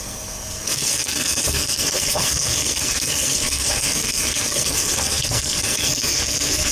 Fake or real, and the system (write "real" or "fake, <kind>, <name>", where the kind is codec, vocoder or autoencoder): fake, codec, SNAC